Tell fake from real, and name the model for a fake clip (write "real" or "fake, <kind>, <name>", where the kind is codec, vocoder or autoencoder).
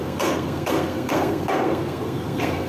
fake, codec, SNAC